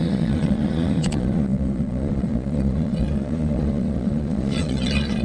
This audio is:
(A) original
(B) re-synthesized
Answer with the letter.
B